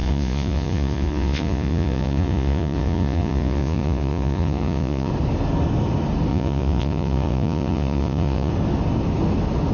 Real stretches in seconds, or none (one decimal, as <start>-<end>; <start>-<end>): 5.1-6.3; 8.5-9.7